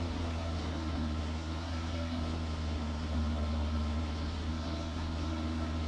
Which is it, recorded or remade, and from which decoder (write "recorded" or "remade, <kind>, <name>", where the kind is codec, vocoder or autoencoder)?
remade, codec, SNAC